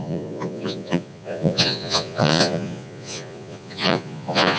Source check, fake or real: fake